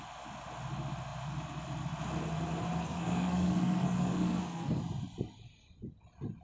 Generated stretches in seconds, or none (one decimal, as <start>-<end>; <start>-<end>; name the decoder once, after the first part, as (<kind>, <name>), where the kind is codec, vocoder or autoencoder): 2.8-4.8 (codec, SNAC)